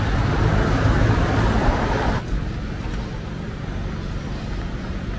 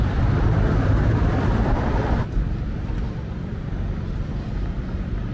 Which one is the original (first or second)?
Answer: first